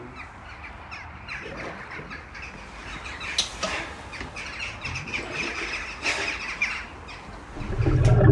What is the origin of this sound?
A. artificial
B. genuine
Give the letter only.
B